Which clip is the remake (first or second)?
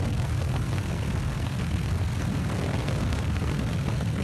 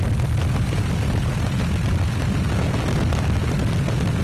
first